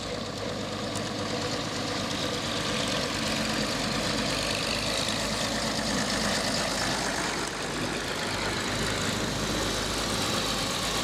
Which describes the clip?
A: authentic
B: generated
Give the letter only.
A